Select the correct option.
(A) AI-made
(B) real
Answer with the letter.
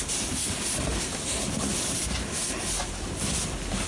B